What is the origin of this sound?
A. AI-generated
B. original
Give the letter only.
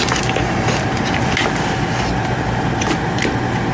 B